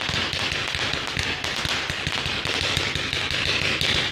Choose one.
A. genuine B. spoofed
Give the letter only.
A